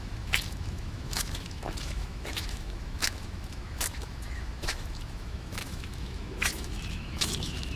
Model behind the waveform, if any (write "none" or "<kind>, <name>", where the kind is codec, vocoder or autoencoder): autoencoder, DAC-VAE